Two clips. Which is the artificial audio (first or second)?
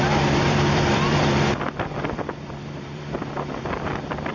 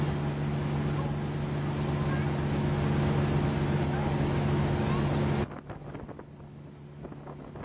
first